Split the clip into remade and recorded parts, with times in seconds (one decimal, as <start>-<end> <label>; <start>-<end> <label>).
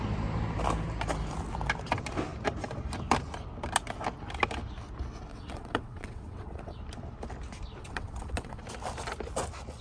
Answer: 0.0-5.3 recorded; 5.3-6.8 remade; 6.8-7.8 recorded; 7.8-8.6 remade; 8.6-9.8 recorded